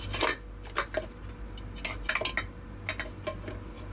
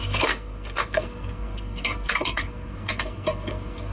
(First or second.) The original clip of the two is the first